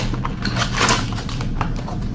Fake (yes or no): no